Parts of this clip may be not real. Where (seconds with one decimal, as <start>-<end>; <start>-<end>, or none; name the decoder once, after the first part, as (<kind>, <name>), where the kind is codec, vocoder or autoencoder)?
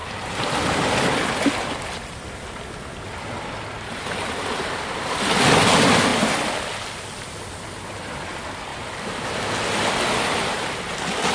none